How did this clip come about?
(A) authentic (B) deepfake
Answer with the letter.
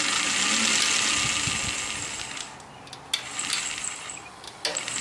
A